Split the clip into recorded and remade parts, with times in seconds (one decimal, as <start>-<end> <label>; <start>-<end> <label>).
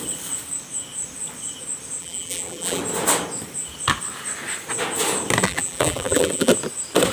0.0-2.0 recorded; 2.0-2.8 remade; 2.8-5.4 recorded; 5.4-6.5 remade; 6.5-7.1 recorded